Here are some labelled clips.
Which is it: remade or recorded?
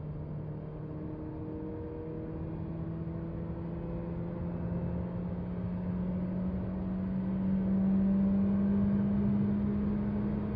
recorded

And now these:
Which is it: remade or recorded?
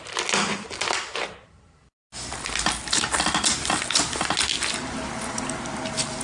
recorded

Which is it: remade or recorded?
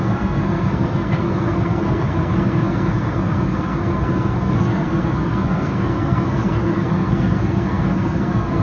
remade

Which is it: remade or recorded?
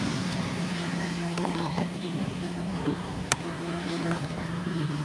remade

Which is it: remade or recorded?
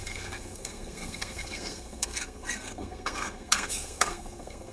remade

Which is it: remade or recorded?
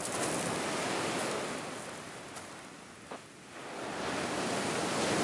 recorded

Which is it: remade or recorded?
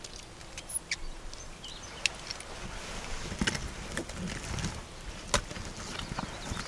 recorded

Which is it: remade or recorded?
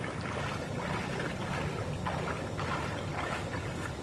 recorded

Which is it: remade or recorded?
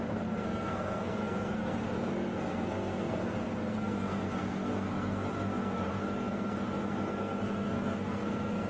remade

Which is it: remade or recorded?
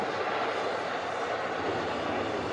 recorded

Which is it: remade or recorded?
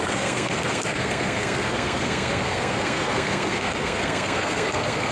remade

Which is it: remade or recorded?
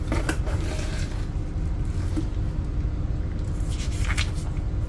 recorded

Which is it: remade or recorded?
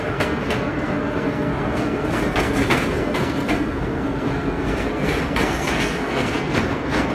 remade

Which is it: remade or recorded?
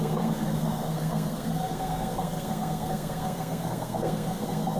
remade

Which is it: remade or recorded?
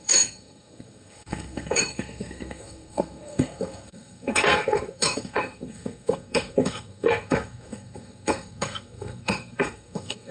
remade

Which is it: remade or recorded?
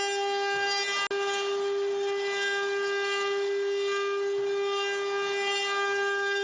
recorded